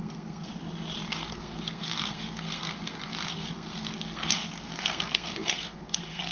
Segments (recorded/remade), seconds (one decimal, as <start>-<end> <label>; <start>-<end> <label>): 0.0-0.5 remade; 0.5-1.1 recorded; 1.1-6.3 remade